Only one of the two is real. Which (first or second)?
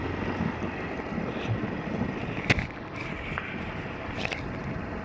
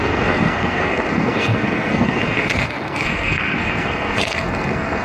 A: first